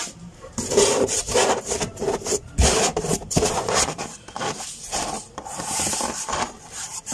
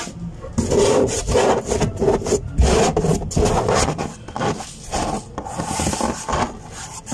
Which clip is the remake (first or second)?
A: first